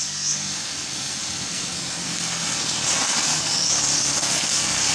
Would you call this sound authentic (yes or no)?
no